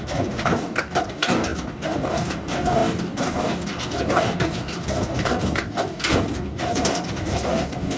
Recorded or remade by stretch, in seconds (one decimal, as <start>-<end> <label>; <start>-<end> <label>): 0.0-8.0 remade